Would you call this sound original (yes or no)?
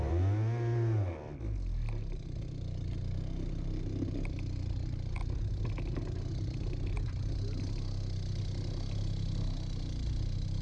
yes